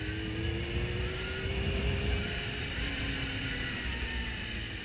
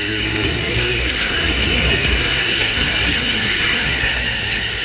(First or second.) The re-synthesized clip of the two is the second